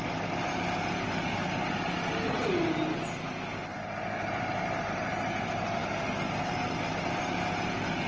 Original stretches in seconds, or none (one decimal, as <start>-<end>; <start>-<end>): 0.0-8.1